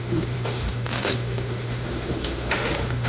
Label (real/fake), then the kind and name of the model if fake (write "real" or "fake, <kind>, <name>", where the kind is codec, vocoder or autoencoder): fake, autoencoder, DAC-VAE